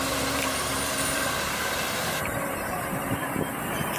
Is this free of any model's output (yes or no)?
no